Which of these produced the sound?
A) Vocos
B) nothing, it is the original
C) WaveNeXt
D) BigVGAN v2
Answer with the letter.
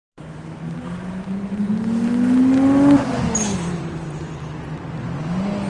B